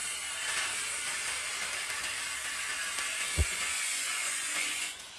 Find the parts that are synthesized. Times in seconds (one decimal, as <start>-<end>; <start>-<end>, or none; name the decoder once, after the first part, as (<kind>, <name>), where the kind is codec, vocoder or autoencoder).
3.1-5.2 (vocoder, Vocos)